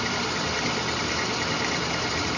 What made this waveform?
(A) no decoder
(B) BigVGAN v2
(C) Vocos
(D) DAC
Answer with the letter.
A